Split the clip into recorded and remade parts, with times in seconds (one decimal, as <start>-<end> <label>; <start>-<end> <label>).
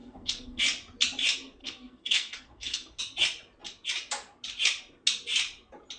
0.0-0.6 remade; 0.6-1.6 recorded; 1.6-3.0 remade; 3.0-6.0 recorded